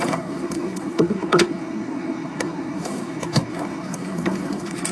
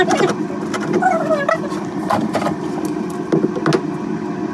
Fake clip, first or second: first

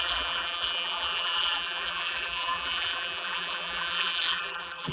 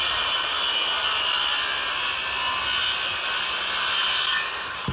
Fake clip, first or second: first